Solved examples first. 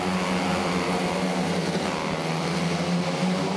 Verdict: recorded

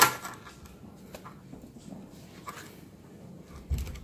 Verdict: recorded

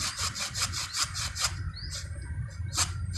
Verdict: recorded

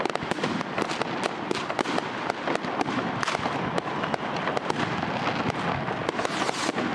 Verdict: recorded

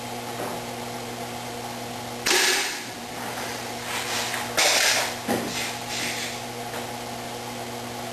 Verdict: recorded